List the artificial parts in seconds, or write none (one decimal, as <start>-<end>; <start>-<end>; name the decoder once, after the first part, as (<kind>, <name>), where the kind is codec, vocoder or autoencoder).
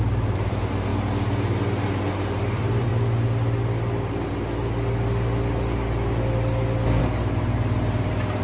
0.0-0.9 (vocoder, BigVGAN v2); 2.1-2.9; 7.0-8.4